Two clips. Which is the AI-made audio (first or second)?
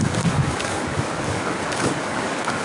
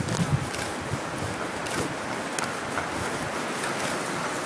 first